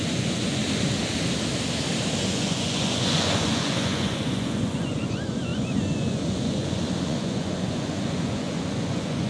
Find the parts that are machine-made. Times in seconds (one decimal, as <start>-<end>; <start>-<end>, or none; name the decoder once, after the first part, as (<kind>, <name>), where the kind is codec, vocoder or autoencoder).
0.0-0.6 (vocoder, Vocos); 2.2-9.3